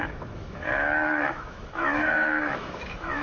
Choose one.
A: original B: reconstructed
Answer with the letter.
B